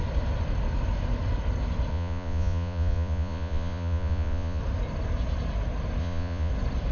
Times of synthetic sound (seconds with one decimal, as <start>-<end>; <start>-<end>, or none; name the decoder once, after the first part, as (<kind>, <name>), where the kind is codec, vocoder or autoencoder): 1.9-4.6 (vocoder, Vocos); 6.0-6.5